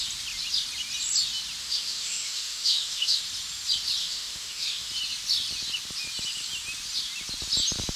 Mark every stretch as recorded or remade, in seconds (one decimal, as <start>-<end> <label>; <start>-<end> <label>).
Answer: 0.0-1.6 recorded; 1.6-3.2 remade; 3.2-4.0 recorded; 4.0-4.9 remade; 4.9-8.0 recorded